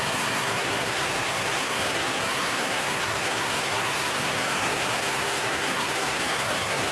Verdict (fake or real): fake